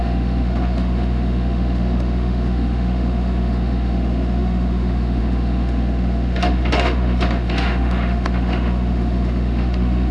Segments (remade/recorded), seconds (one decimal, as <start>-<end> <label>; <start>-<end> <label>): 0.0-10.1 remade

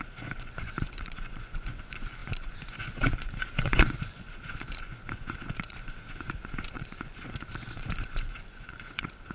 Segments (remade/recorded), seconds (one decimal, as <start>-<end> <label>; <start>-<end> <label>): 0.0-9.3 remade

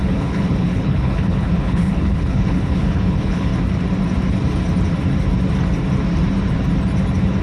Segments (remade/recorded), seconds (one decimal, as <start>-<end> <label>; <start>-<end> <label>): 0.0-3.5 remade; 3.5-7.4 recorded

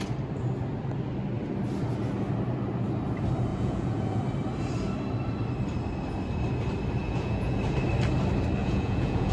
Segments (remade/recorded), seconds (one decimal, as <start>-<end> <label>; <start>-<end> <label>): 0.0-3.5 recorded; 3.5-4.2 remade; 4.2-7.0 recorded; 7.0-7.6 remade; 7.6-8.6 recorded; 8.6-9.3 remade

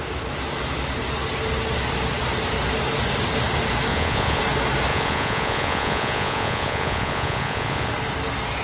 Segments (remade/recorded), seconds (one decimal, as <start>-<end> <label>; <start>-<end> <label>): 0.0-3.9 recorded; 3.9-4.4 remade; 4.4-4.9 recorded; 4.9-7.9 remade; 7.9-8.6 recorded